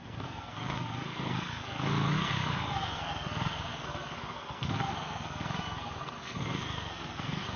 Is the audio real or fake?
fake